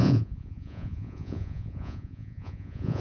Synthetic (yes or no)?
yes